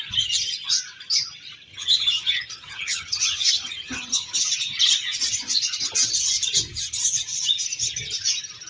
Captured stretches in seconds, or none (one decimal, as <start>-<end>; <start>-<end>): 0.0-1.7; 4.4-8.7